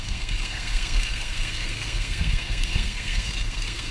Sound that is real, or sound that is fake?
fake